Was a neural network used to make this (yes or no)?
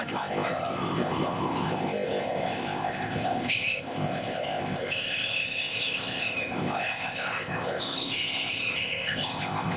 yes